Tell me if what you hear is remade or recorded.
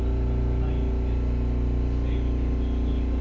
recorded